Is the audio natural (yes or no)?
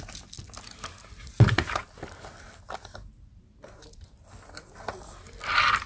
yes